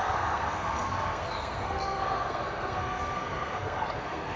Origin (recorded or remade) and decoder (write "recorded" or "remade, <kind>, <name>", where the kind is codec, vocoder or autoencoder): remade, codec, SNAC